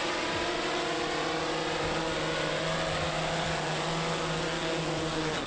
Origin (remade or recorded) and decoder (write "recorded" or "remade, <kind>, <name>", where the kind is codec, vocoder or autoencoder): recorded